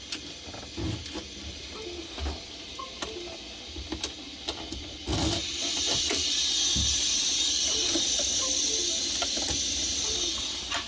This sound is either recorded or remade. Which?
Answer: recorded